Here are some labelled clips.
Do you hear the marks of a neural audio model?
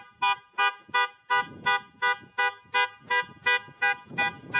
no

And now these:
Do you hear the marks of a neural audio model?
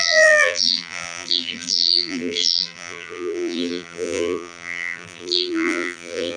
yes